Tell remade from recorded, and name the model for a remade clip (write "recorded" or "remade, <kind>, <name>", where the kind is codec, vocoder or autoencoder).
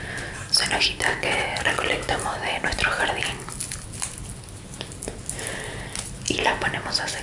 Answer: recorded